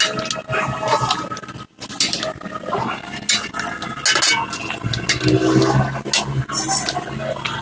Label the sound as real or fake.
real